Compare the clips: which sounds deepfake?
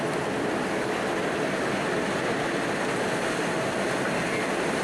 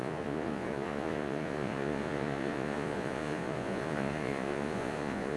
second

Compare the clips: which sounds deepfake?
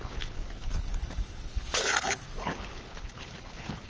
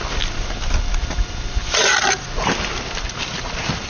first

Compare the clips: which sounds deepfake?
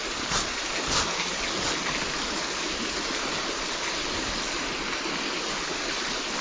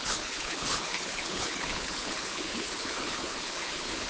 second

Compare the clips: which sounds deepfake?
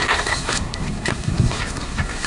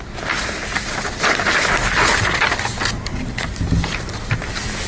first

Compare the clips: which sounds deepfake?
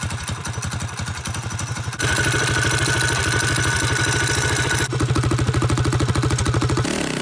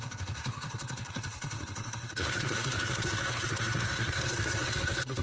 second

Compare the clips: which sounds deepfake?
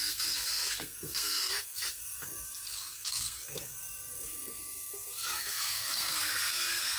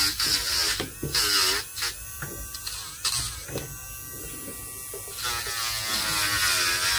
first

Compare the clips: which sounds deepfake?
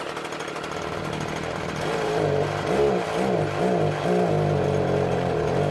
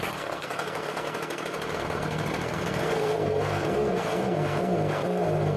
second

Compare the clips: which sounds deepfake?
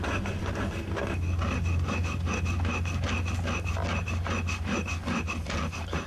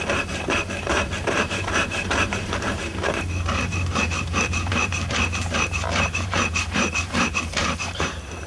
second